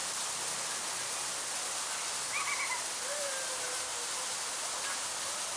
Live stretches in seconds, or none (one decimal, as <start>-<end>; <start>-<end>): 0.0-5.6